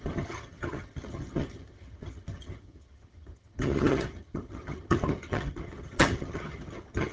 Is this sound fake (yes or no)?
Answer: yes